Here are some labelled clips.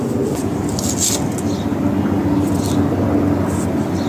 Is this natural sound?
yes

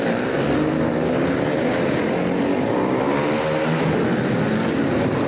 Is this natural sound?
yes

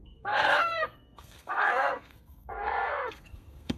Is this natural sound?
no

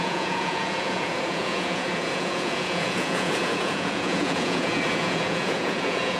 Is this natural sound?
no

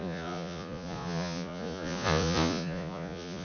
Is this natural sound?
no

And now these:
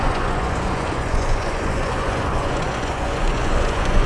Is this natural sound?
no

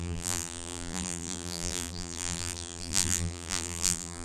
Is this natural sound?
no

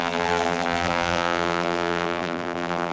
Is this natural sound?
no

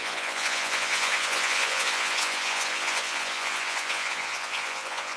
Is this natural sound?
no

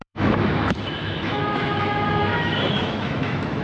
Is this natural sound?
no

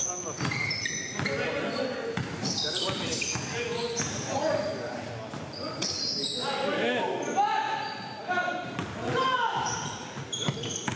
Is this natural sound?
yes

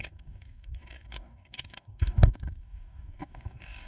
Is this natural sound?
no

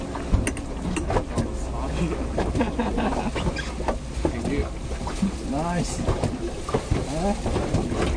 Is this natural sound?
yes